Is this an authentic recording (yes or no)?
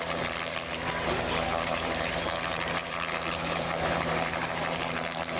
no